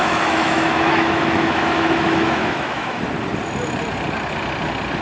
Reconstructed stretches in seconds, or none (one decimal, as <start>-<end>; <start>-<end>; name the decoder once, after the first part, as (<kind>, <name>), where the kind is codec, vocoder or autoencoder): 0.0-3.0 (autoencoder, DAC-VAE)